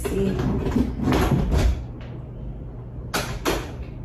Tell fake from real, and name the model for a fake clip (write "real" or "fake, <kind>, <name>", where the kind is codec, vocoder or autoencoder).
real